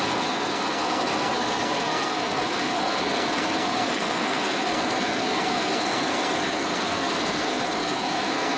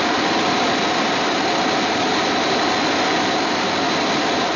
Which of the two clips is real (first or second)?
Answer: second